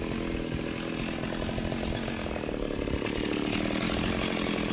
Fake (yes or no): no